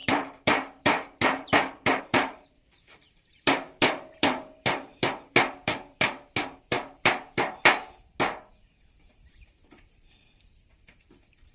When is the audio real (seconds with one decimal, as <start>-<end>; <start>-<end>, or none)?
0.0-2.0; 8.1-8.6